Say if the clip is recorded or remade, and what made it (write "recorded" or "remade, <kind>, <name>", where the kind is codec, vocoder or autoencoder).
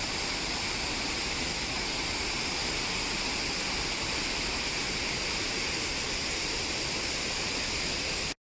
recorded